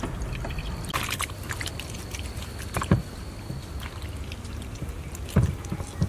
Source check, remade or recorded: recorded